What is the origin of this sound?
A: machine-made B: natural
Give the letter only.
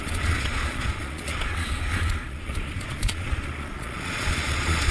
A